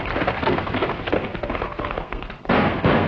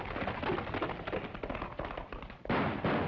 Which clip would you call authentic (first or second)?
second